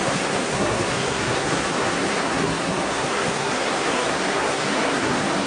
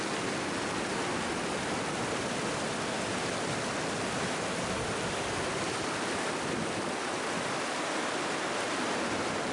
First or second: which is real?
second